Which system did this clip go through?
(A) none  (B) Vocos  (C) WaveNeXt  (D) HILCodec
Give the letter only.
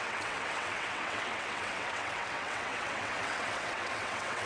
C